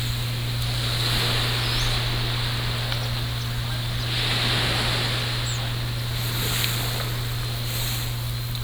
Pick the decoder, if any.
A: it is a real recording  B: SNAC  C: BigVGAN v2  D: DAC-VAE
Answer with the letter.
A